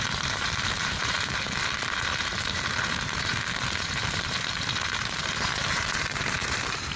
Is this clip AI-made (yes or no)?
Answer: yes